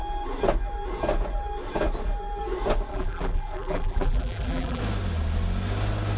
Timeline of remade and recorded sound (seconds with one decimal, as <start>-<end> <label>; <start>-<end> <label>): 0.0-2.9 recorded; 2.9-4.8 remade; 4.8-6.2 recorded